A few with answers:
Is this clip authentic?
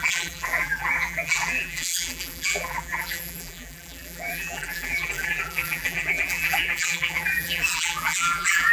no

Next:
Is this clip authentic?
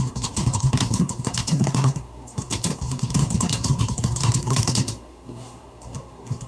no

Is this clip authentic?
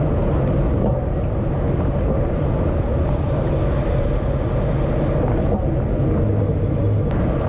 yes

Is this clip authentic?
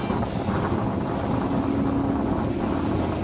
yes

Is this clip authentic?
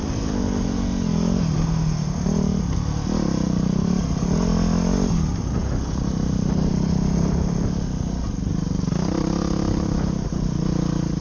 yes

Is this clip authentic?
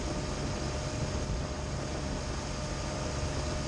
yes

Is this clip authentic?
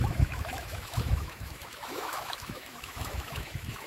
no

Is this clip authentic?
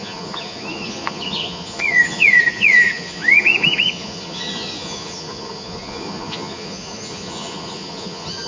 no